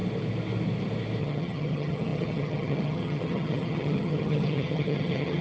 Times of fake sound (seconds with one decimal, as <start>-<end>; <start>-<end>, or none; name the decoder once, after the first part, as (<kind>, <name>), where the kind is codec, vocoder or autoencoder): 1.2-5.4 (vocoder, HiFi-GAN)